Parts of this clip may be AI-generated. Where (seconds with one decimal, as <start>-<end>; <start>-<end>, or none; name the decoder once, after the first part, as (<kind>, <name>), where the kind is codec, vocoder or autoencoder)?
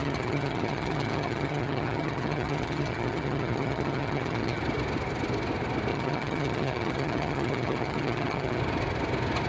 0.0-4.6 (vocoder, HiFi-GAN); 5.9-8.6